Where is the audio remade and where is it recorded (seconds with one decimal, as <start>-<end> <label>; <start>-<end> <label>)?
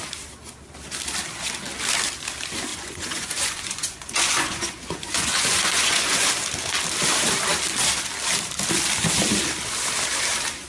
0.0-2.7 recorded; 2.7-6.3 remade; 6.3-10.7 recorded